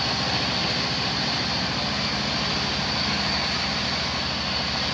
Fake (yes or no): no